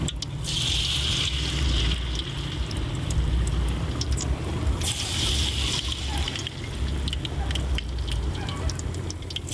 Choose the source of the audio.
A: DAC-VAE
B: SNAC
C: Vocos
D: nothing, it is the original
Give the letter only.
D